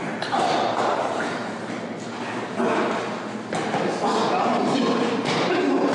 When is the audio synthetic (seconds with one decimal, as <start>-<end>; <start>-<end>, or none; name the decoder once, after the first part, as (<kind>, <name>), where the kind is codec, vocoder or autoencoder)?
0.0-1.4 (vocoder, BigVGAN v2); 4.9-5.9